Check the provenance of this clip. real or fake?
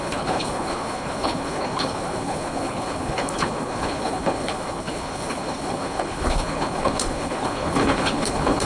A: fake